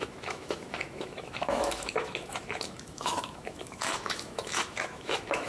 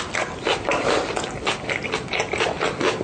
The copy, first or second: first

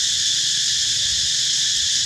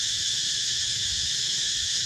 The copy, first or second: second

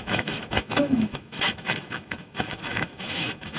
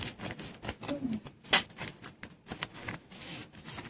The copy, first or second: first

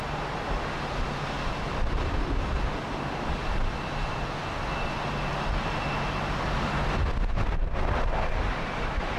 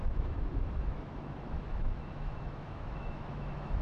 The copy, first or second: second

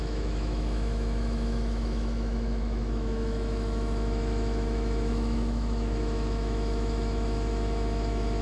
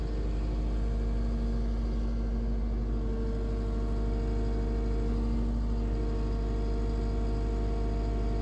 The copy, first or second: first